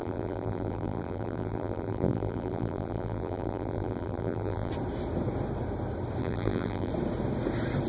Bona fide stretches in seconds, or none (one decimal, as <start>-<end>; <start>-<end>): 4.7-6.2; 6.9-7.9